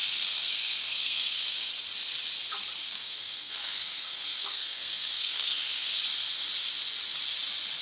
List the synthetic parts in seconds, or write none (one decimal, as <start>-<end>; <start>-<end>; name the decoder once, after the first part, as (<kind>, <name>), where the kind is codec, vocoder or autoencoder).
0.0-1.7 (codec, SNAC); 2.8-5.9